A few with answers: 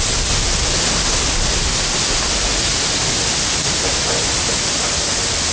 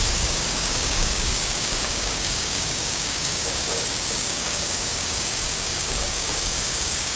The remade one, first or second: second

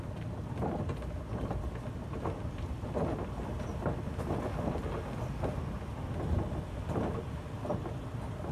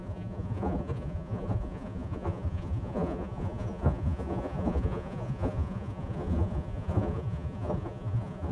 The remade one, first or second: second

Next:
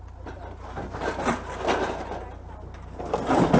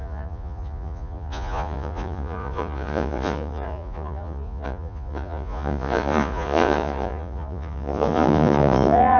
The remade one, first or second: second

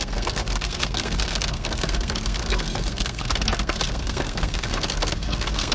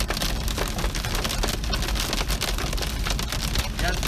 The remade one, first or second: first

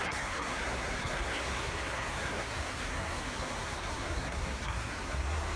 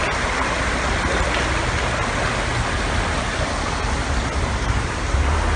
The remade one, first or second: first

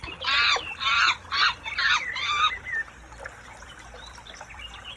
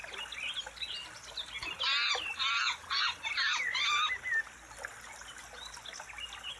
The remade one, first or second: first